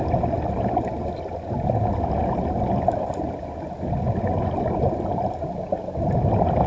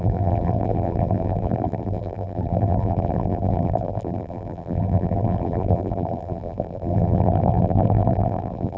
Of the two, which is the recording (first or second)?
first